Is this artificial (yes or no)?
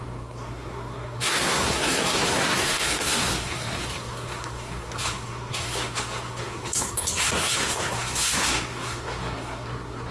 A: yes